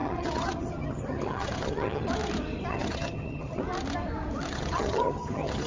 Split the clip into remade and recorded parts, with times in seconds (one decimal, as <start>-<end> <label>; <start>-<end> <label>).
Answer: 0.0-2.1 remade; 2.1-2.7 recorded; 2.7-3.6 remade; 3.6-4.5 recorded; 4.5-5.7 remade